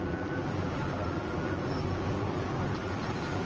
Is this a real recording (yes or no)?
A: no